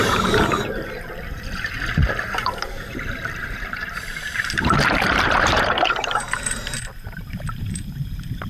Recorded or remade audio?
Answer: remade